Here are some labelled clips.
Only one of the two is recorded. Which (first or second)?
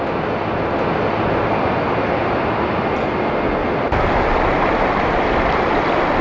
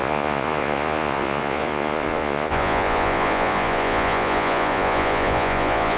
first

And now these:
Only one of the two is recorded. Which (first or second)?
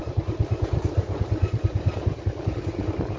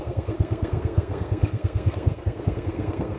first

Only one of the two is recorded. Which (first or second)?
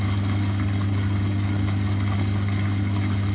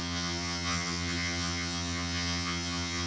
first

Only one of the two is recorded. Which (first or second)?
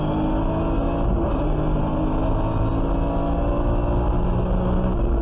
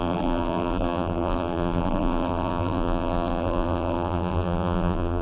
first